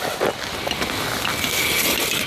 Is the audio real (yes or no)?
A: yes